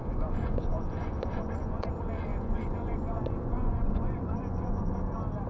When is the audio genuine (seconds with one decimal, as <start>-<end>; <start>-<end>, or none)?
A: 1.9-2.3; 5.0-5.5